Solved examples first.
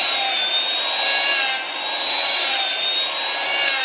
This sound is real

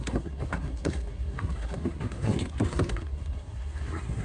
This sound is fake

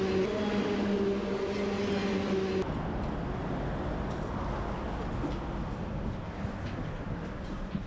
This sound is real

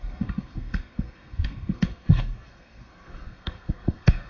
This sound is fake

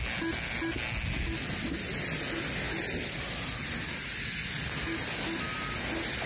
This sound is real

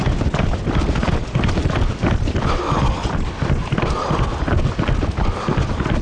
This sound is real